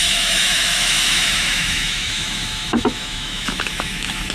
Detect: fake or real fake